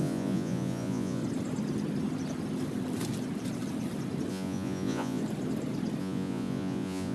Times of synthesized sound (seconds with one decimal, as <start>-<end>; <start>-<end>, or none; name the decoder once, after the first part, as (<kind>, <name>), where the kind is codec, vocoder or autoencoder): 0.0-1.2 (vocoder, Vocos); 4.3-5.2; 6.0-7.1